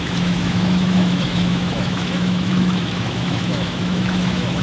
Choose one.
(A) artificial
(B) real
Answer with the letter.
A